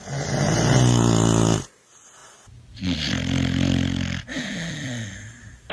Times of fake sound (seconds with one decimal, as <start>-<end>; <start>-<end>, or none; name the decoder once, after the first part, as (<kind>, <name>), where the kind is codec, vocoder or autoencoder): none